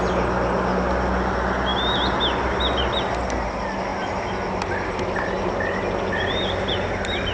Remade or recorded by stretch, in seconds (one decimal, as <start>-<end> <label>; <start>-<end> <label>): 0.0-7.3 recorded